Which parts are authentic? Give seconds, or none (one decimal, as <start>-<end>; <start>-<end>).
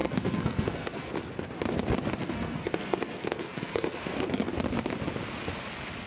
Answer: 1.1-2.2; 4.5-6.1